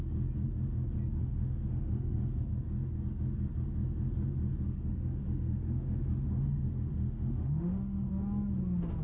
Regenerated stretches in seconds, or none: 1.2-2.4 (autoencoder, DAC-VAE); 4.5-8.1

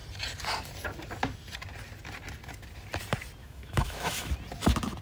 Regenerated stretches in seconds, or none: 3.4-4.3 (autoencoder, DAC-VAE)

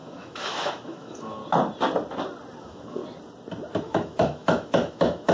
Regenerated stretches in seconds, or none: 0.0-1.4 (autoencoder, DAC-VAE); 2.6-3.0; 3.8-5.3